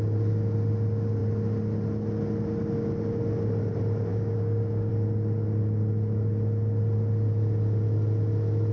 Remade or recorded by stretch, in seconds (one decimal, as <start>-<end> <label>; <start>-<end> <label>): 0.0-4.1 recorded; 4.1-4.9 remade; 4.9-8.7 recorded